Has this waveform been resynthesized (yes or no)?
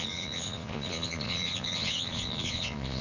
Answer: yes